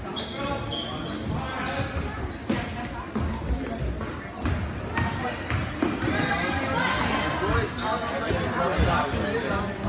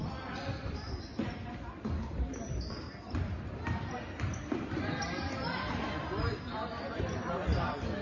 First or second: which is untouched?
first